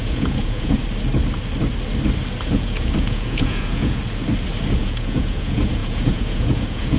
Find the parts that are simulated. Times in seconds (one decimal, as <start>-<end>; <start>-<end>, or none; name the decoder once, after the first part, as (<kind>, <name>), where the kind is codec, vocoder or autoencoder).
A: 0.0-0.8 (vocoder, Vocos); 2.5-4.0; 4.7-7.0